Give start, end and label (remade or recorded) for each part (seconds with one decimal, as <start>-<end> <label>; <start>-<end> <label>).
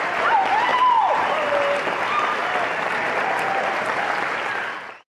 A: 0.0-0.7 recorded; 0.7-1.4 remade; 1.4-5.2 recorded